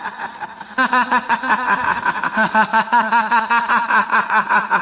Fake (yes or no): yes